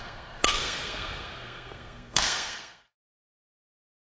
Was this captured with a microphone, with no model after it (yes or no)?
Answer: no